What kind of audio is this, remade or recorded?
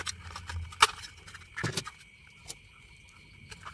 recorded